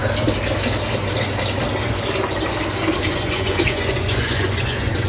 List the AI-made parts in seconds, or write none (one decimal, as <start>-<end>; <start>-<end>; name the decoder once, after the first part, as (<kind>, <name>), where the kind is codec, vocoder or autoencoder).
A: 3.1-5.1 (vocoder, Vocos)